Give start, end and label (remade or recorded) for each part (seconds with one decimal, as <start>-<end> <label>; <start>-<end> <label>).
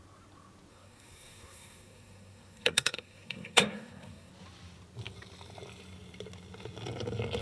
0.0-0.7 recorded; 0.7-4.3 remade; 4.3-7.4 recorded